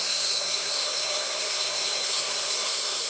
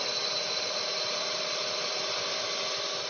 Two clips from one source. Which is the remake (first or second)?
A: first